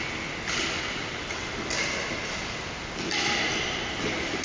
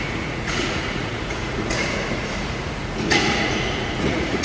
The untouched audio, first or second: first